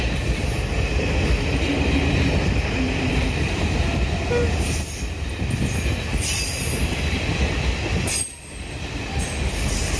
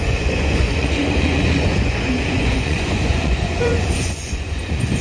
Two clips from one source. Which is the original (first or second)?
first